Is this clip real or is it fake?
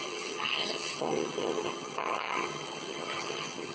fake